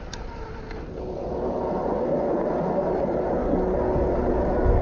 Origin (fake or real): real